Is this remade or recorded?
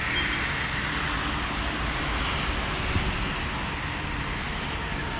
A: recorded